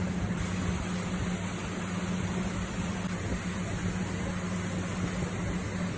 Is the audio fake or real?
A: real